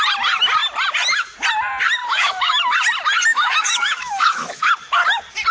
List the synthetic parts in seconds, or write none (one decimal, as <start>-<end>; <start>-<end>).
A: 2.0-2.6; 3.3-4.7